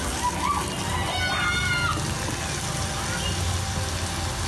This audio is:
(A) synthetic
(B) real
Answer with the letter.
B